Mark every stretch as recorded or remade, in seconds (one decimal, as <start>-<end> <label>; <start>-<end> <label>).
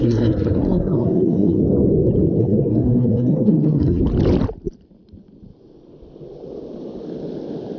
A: 0.0-1.6 remade; 1.6-2.4 recorded; 2.4-4.0 remade; 4.0-7.8 recorded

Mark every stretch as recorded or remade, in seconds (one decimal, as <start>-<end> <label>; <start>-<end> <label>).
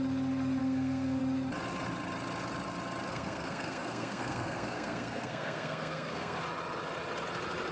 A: 0.0-0.6 recorded; 0.6-1.2 remade; 1.2-3.1 recorded; 3.1-6.4 remade; 6.4-7.7 recorded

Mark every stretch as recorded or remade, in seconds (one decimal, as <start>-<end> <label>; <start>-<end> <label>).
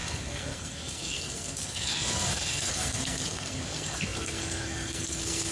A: 0.0-5.5 remade